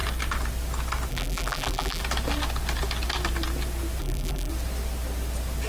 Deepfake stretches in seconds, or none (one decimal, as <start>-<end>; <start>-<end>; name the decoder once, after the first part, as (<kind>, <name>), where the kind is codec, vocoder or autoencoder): 1.1-2.0 (vocoder, BigVGAN v2); 4.0-4.5